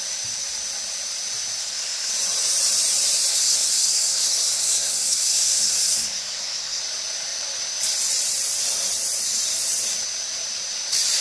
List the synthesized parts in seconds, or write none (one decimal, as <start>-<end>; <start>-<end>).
1.6-2.1; 3.3-6.8